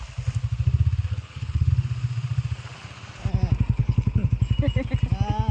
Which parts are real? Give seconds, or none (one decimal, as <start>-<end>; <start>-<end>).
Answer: 0.0-1.1; 1.7-3.8; 4.3-5.5